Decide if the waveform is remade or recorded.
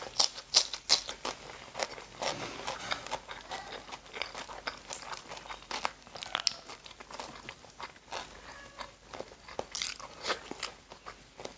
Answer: recorded